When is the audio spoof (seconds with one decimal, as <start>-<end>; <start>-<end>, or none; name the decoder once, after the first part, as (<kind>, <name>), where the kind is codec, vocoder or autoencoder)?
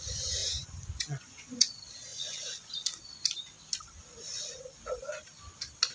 0.4-1.7 (vocoder, Vocos); 2.1-2.7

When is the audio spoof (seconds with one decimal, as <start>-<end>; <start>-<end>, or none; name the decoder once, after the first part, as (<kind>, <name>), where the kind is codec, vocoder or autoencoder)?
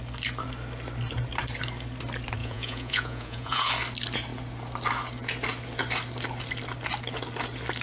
2.4-3.7 (vocoder, Vocos)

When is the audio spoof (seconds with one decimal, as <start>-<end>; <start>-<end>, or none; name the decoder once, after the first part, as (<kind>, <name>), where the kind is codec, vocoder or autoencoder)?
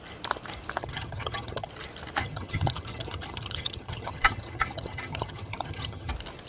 0.8-1.7 (vocoder, HiFi-GAN); 2.2-6.1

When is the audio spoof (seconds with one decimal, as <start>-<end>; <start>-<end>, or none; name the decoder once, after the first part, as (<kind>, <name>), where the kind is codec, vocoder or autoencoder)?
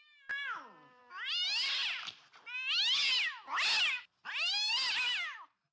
none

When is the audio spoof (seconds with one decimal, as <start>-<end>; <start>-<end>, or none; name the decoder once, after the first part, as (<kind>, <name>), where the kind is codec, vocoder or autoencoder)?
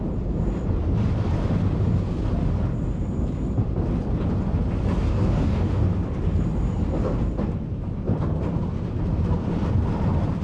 5.1-5.8 (codec, DAC)